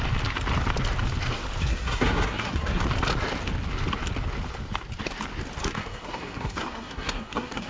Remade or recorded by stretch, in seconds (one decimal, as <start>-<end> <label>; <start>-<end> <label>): 0.0-1.7 recorded; 1.7-2.8 remade; 2.8-5.6 recorded; 5.6-7.7 remade